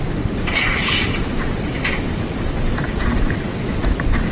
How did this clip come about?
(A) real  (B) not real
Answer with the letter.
B